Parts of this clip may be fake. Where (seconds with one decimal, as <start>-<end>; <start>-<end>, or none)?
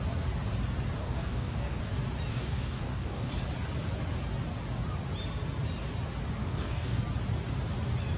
1.0-1.8; 2.3-3.3; 6.4-7.0